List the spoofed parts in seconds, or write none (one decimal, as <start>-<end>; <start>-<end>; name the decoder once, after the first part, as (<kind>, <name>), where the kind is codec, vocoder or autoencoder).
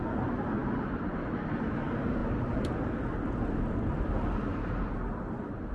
none